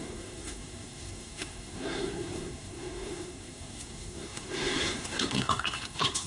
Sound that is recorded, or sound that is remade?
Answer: remade